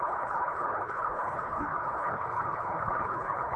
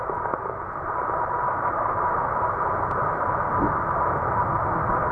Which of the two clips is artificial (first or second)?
first